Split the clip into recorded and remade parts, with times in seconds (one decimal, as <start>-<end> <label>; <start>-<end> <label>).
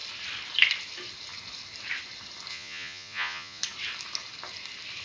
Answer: 0.0-2.5 recorded; 2.5-3.6 remade; 3.6-5.0 recorded